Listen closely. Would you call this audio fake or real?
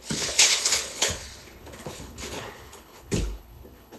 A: fake